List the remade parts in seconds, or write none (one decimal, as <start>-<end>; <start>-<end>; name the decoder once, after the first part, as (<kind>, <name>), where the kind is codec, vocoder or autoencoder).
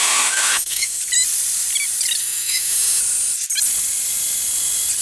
0.0-1.0 (autoencoder, DAC-VAE); 2.2-3.0